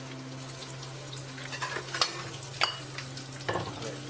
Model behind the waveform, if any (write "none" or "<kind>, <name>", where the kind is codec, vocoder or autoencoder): none